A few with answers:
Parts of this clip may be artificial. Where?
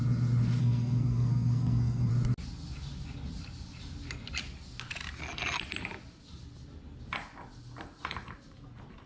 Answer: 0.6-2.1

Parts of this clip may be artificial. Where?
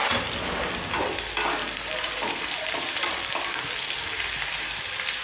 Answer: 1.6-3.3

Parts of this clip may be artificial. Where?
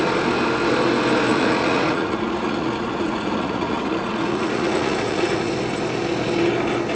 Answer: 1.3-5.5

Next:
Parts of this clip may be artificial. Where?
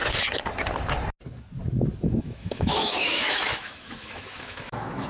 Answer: 2.2-5.1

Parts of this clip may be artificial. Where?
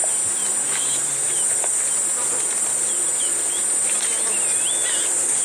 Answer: none